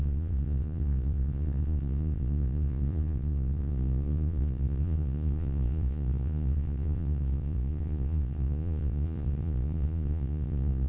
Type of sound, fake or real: fake